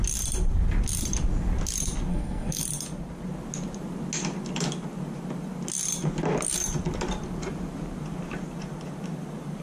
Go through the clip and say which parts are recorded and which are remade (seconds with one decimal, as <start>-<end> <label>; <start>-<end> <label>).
0.0-2.1 recorded; 2.1-2.6 remade; 2.6-9.6 recorded